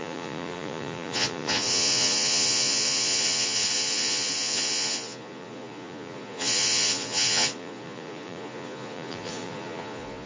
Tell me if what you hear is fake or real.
fake